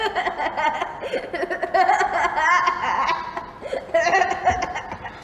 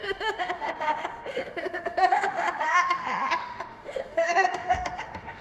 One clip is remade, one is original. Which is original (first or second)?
first